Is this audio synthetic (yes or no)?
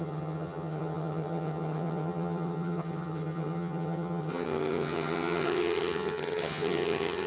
yes